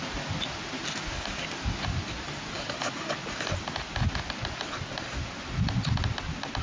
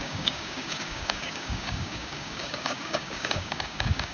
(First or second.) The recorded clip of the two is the first